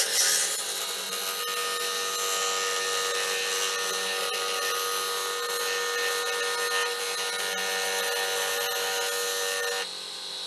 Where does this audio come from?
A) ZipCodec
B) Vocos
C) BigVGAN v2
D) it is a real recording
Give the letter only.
D